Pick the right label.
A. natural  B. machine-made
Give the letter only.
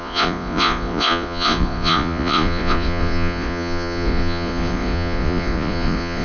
B